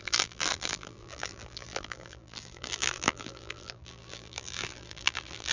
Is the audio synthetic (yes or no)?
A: yes